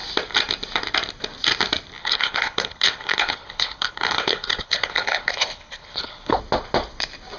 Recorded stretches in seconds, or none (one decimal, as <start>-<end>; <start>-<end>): 0.0-2.0; 6.4-7.4